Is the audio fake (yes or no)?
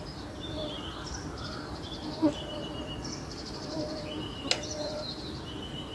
no